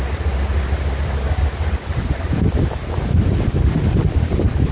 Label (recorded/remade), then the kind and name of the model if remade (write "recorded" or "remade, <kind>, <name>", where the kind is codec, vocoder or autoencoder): recorded